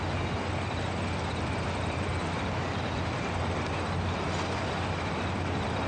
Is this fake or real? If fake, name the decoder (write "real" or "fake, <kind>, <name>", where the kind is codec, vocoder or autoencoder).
real